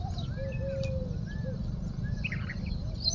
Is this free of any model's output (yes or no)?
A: yes